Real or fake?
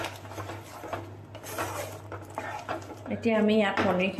real